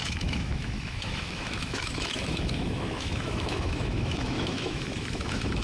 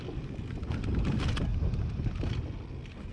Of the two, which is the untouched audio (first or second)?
second